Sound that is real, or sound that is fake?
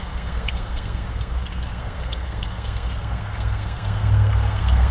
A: fake